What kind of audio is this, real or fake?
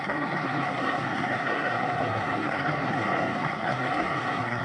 fake